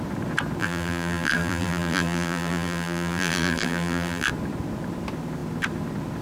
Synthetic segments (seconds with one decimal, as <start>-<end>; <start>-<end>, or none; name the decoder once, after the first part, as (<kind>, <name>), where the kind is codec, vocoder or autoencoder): 0.6-4.3 (vocoder, BigVGAN v2)